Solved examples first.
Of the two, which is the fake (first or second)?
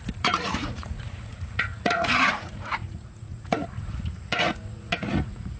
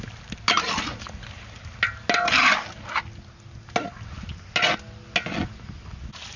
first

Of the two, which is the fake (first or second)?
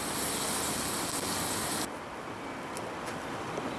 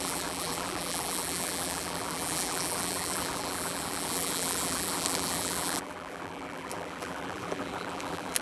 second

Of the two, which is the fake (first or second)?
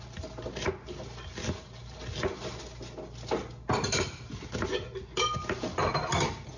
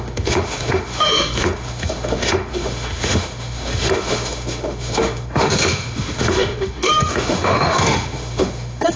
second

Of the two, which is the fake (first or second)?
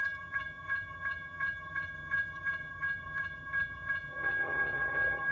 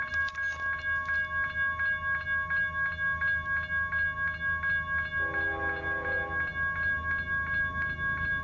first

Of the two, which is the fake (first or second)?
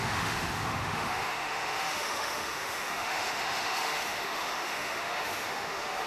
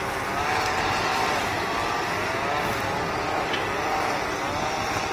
first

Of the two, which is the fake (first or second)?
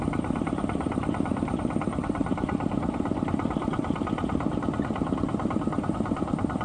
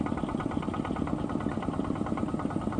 first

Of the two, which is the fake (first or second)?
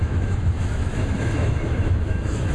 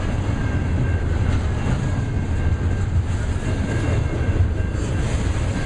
first